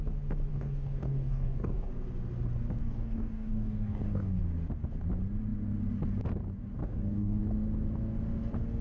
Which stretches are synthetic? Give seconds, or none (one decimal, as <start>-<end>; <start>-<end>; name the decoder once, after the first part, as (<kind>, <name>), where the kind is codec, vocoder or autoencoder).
0.5-1.9 (codec, DAC); 2.8-4.4; 6.8-7.4